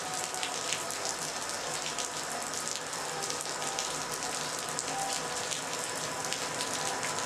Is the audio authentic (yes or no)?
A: yes